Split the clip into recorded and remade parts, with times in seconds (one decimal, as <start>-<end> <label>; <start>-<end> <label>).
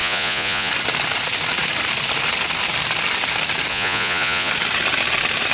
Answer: 0.0-0.7 remade; 0.7-3.7 recorded; 3.7-4.5 remade; 4.5-5.5 recorded